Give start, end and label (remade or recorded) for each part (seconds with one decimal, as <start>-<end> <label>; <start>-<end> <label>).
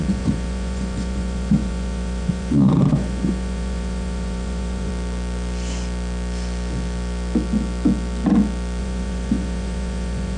0.0-4.9 remade; 4.9-8.8 recorded; 8.8-10.4 remade